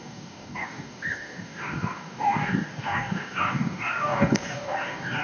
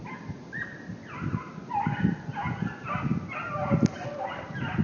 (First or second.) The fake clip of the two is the first